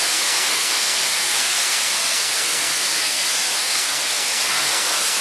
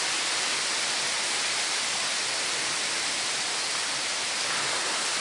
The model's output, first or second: first